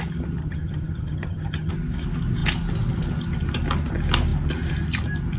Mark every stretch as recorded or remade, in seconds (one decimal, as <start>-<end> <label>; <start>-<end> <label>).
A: 0.0-0.4 recorded; 0.4-1.7 remade; 1.7-5.4 recorded